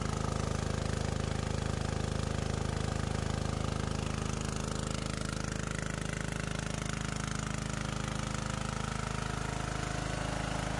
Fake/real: real